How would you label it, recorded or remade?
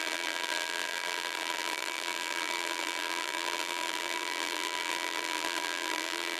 remade